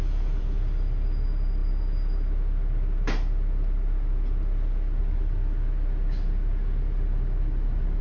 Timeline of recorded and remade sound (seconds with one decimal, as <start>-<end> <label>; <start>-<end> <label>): 0.0-8.0 recorded